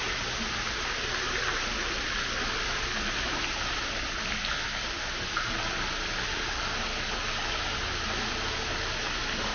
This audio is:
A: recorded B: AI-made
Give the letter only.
A